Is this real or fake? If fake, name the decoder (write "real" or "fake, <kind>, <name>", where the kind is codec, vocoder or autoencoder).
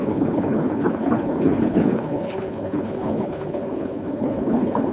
fake, codec, HILCodec